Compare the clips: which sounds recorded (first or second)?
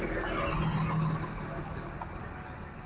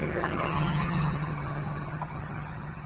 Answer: first